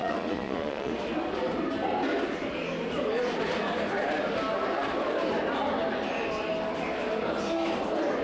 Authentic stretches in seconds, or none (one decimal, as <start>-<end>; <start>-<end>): 0.9-8.2